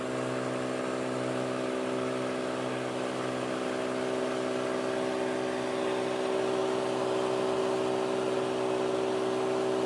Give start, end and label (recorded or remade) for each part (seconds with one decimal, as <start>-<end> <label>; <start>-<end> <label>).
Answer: 0.0-9.9 recorded